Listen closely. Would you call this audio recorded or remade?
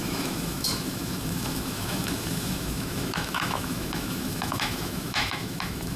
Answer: remade